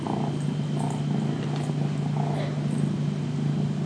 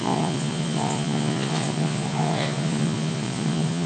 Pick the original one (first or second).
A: first